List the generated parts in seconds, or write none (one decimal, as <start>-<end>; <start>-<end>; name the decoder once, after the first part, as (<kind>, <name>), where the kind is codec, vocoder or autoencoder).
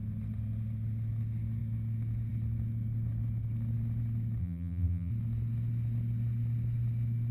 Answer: 4.4-5.1 (vocoder, BigVGAN v2)